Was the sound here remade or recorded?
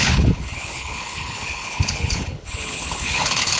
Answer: remade